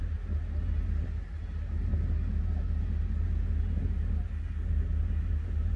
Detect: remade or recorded recorded